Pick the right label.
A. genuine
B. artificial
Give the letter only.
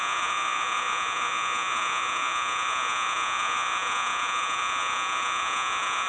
B